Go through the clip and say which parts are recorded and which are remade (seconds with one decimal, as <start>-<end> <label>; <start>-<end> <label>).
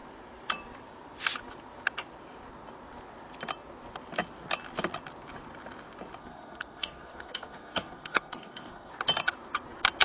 0.0-6.2 recorded; 6.2-8.9 remade; 8.9-10.0 recorded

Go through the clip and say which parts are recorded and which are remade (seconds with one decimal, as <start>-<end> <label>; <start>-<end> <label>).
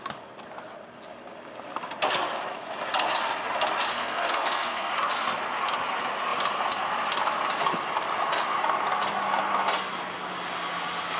0.0-3.9 recorded; 3.9-4.9 remade; 4.9-11.2 recorded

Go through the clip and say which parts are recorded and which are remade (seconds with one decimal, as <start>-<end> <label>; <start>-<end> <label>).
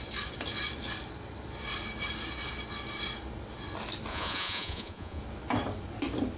0.0-4.1 recorded; 4.1-5.2 remade; 5.2-6.4 recorded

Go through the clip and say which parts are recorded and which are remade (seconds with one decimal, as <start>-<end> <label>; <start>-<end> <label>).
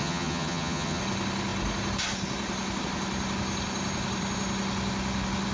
0.0-1.0 remade; 1.0-5.5 recorded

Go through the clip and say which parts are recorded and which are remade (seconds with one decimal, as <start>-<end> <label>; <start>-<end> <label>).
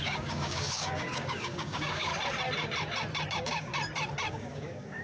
0.0-2.1 remade; 2.1-3.3 recorded; 3.3-3.7 remade; 3.7-4.3 recorded; 4.3-5.0 remade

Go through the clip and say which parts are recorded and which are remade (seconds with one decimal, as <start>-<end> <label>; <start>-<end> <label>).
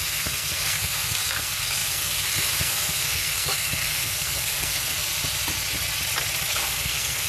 0.0-5.1 remade; 5.1-6.5 recorded; 6.5-7.3 remade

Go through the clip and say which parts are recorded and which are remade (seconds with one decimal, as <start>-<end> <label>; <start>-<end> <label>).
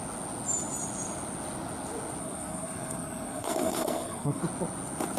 0.0-2.2 recorded; 2.2-4.4 remade; 4.4-5.2 recorded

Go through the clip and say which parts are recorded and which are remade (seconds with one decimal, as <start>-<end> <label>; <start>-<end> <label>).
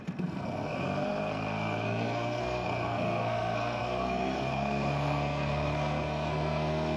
0.0-7.0 remade